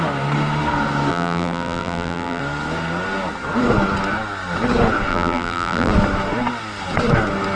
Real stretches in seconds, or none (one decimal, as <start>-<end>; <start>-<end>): 0.0-1.1; 2.4-5.1; 5.9-7.6